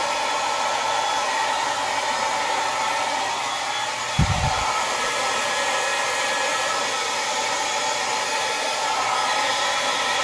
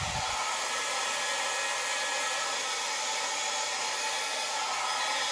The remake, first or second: first